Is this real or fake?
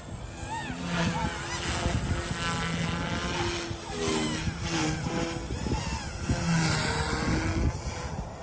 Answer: real